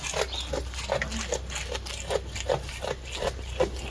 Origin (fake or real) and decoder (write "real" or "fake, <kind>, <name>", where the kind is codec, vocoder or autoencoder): real